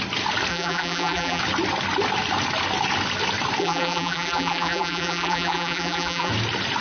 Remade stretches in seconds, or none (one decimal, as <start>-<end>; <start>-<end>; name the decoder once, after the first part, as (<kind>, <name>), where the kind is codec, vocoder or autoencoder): 0.5-1.4 (vocoder, BigVGAN v2); 3.6-6.3